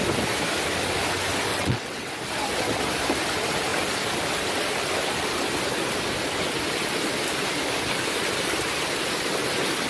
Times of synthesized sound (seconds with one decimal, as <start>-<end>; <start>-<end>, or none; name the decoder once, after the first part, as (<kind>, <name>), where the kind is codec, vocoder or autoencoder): 1.5-2.1 (vocoder, WaveNeXt)